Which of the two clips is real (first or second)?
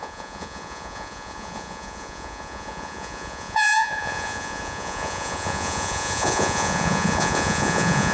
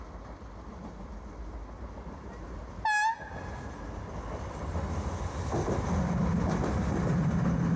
second